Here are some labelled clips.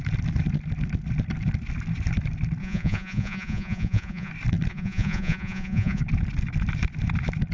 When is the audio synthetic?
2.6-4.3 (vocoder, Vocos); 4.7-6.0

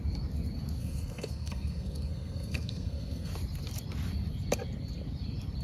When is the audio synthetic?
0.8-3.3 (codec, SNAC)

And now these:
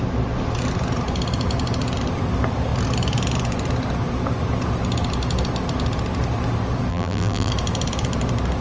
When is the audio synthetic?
6.9-7.5 (vocoder, BigVGAN v2)

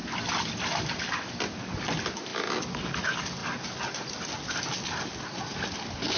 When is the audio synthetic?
none

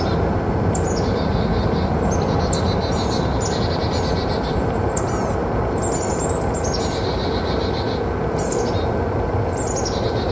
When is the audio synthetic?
none

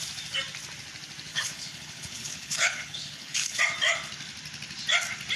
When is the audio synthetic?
1.3-3.6 (codec, HILCodec)

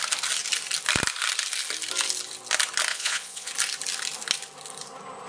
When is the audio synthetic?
2.9-3.5 (vocoder, Vocos)